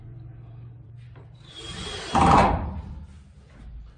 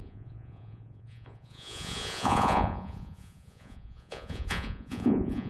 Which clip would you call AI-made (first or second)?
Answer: second